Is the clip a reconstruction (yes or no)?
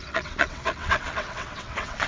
yes